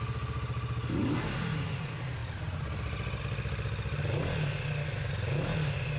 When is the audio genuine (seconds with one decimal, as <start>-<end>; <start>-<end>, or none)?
0.0-6.0